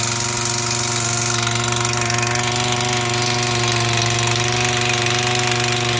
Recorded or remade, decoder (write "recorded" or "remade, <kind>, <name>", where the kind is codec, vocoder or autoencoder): recorded